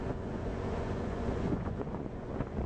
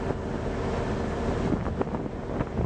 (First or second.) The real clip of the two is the second